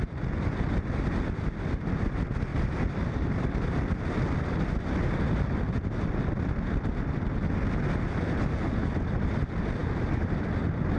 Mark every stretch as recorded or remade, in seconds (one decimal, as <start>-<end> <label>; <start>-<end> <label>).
0.0-2.5 recorded; 2.5-3.9 remade; 3.9-11.0 recorded